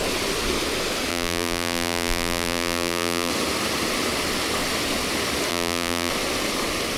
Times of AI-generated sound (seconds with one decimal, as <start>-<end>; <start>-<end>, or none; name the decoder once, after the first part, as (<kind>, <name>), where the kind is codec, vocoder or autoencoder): 1.1-3.3 (vocoder, BigVGAN v2); 5.5-6.1